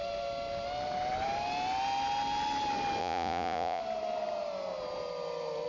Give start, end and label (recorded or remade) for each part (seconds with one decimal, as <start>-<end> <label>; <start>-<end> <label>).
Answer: 0.0-3.0 recorded; 3.0-3.8 remade; 3.8-5.7 recorded